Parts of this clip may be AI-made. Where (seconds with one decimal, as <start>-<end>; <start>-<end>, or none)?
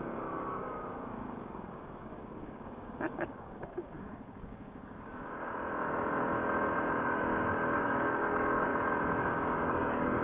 0.0-5.5; 6.9-8.7; 9.2-10.2